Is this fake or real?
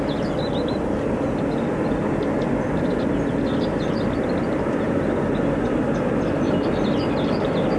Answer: real